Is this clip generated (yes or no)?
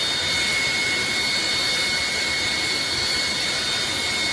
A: no